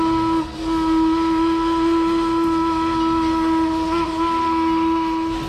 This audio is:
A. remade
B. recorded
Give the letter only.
B